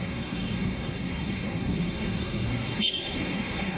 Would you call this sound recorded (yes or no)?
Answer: no